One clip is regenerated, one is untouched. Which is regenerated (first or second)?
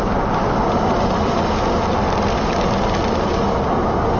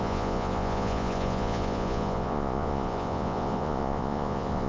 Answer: second